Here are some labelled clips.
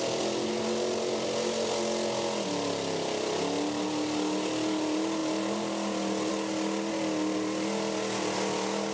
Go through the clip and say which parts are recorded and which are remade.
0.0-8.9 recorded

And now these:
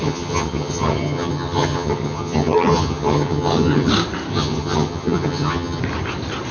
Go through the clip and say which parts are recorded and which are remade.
0.0-3.9 remade; 3.9-4.3 recorded; 4.3-5.8 remade; 5.8-6.5 recorded

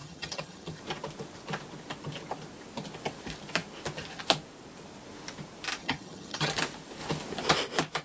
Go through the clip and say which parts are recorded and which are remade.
0.0-0.8 remade; 0.8-5.8 recorded; 5.8-6.5 remade; 6.5-8.0 recorded